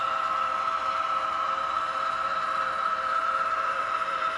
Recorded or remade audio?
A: remade